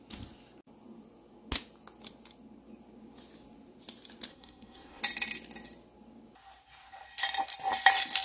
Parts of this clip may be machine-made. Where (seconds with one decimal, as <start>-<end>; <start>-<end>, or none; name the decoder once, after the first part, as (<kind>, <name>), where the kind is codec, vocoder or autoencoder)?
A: 4.3-5.0 (codec, SNAC)